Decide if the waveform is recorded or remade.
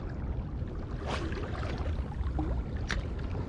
recorded